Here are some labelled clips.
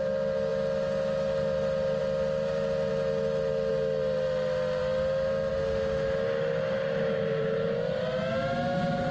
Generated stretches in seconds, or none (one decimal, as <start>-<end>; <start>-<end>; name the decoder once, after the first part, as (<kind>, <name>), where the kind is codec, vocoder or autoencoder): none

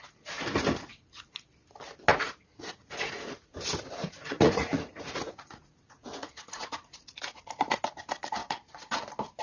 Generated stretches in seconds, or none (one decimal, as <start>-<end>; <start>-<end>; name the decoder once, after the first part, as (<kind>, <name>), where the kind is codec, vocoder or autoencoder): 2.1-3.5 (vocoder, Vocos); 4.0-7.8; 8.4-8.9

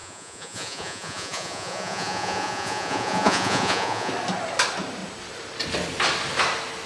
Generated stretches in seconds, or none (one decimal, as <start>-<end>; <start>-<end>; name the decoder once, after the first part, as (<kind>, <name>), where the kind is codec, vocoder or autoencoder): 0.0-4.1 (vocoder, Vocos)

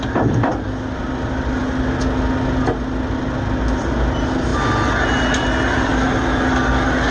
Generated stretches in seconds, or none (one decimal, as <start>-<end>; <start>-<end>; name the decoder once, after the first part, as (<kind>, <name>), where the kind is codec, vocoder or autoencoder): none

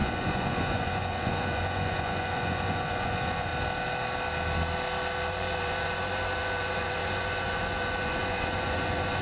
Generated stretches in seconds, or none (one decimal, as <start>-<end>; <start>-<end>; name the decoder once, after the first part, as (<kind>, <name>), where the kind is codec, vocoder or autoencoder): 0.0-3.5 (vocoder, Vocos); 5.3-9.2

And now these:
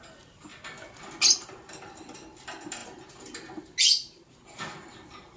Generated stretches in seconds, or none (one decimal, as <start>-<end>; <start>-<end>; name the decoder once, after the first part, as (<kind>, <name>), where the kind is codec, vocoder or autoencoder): none